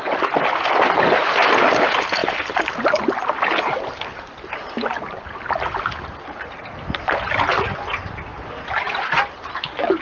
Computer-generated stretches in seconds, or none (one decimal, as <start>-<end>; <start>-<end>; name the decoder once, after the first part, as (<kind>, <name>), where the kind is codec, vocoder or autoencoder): none